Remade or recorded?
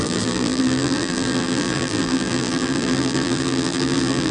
remade